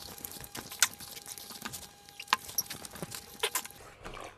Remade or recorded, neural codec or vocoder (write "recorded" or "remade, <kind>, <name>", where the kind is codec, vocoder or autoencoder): recorded